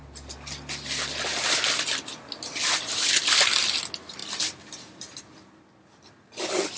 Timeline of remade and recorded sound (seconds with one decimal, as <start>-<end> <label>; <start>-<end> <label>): 0.0-6.8 recorded